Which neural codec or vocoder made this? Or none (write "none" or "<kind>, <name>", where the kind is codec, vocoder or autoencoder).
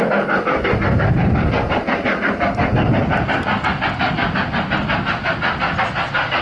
none